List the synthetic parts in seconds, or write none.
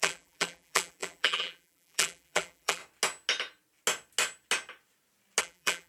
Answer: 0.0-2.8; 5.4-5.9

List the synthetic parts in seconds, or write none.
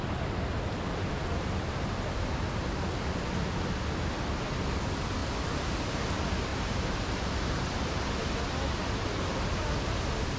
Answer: 5.2-5.7; 6.5-8.1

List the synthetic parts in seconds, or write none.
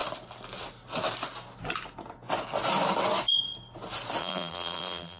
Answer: 4.2-5.2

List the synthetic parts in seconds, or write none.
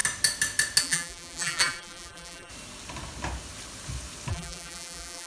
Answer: 0.8-2.5; 4.3-5.3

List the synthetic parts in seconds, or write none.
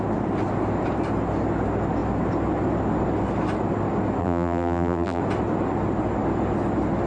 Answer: 4.2-5.2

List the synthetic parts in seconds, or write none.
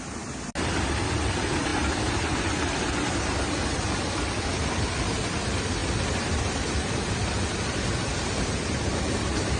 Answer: none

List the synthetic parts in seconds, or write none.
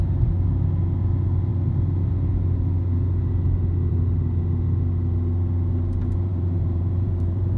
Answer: 6.3-7.6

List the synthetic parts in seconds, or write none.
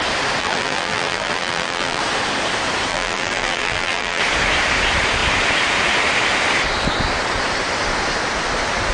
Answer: 0.4-2.0; 2.9-4.2